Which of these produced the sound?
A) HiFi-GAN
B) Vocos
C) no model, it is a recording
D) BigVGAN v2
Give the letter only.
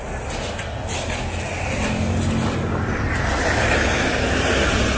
C